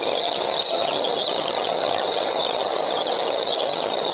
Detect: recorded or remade remade